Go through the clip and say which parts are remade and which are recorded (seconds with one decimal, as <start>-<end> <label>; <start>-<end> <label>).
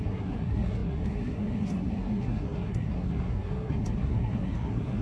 0.0-5.0 remade